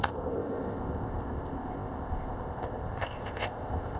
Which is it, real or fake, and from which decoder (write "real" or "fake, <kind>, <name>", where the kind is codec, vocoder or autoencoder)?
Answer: fake, codec, ZipCodec